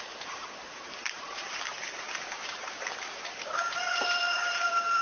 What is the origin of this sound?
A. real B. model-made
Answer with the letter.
B